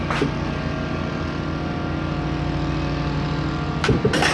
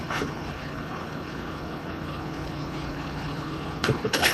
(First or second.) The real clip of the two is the first